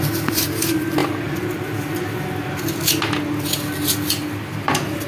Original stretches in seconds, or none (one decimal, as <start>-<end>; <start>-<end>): 0.0-5.1